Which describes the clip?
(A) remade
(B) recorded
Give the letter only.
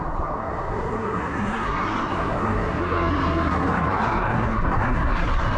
A